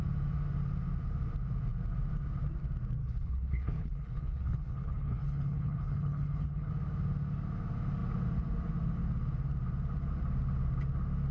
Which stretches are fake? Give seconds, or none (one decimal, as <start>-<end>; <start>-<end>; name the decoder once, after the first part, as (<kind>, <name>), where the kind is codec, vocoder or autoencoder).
3.0-6.7 (codec, HILCodec)

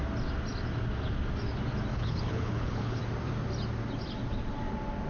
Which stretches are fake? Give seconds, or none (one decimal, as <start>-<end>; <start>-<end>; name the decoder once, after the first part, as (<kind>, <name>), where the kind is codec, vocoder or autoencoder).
1.9-3.0 (codec, HILCodec)